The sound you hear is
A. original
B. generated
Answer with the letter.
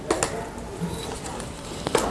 A